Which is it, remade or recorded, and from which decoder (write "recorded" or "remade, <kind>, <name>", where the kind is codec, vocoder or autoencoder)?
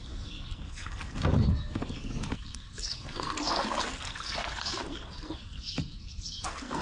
remade, codec, SNAC